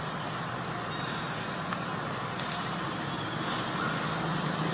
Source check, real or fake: real